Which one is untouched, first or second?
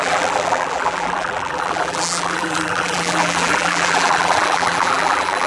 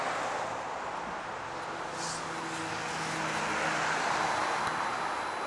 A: second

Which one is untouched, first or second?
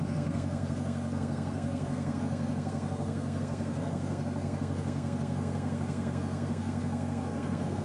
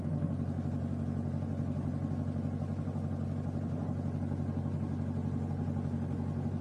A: second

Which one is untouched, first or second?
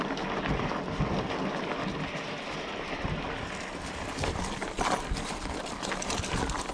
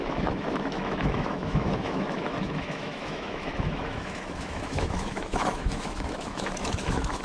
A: first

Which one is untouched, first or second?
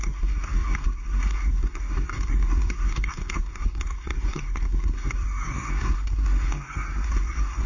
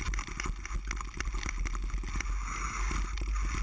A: second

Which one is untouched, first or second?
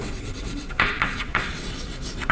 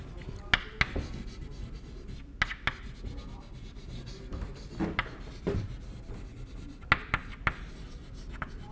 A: second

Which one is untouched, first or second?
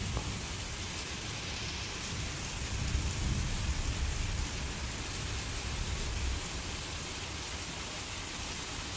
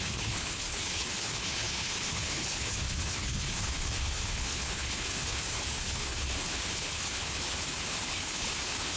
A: first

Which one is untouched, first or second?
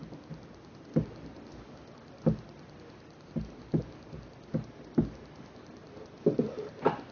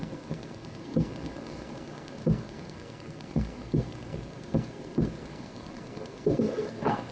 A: first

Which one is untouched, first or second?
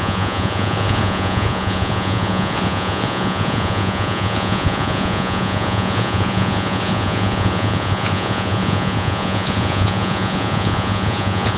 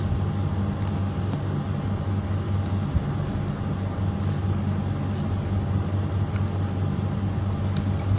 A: second